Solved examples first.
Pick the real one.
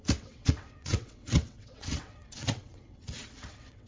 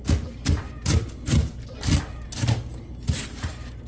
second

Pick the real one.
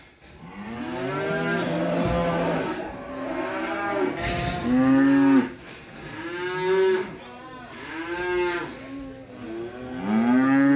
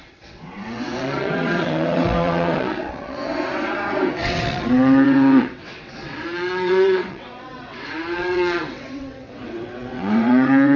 first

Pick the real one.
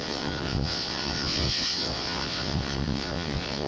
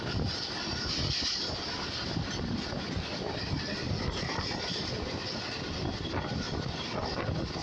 second